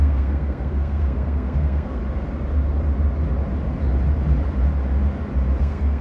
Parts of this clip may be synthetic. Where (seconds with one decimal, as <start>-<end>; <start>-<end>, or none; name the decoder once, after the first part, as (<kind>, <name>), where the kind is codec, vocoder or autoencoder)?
0.0-2.0 (codec, SNAC); 5.6-6.0